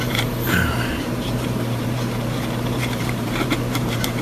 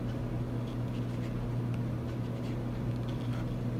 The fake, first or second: first